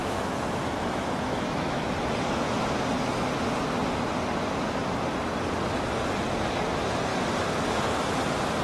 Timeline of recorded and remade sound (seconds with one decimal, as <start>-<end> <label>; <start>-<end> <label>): 0.0-1.8 remade; 1.8-8.6 recorded